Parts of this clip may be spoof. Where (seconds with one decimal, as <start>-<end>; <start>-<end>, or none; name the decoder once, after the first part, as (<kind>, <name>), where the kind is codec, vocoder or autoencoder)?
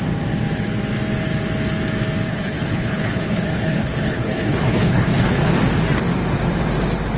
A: 2.3-5.5 (codec, HILCodec)